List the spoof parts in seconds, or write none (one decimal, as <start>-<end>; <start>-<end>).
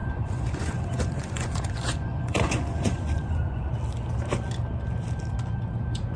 0.0-3.7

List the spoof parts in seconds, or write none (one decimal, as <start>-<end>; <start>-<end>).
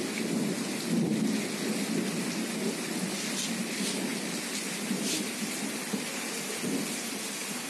none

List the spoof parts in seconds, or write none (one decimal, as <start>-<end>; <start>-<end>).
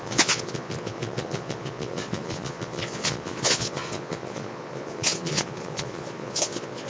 0.0-6.9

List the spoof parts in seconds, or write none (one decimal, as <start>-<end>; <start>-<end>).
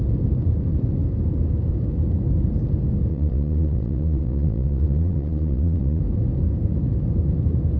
3.1-6.0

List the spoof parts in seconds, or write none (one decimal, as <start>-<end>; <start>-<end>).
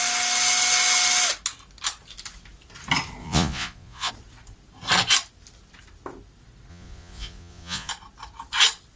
3.2-4.1; 6.7-7.9